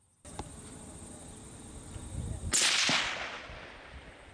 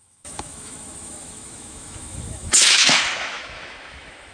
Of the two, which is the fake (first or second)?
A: second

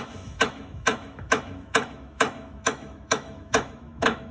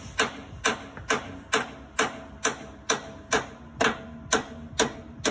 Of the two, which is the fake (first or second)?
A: first